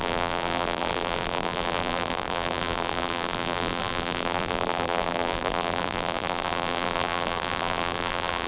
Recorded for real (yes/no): no